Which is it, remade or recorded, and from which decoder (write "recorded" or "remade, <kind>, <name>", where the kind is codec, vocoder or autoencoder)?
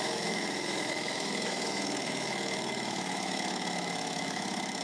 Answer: remade, autoencoder, DAC-VAE